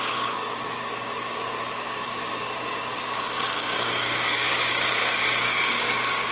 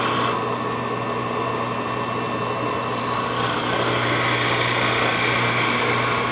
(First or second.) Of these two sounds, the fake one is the first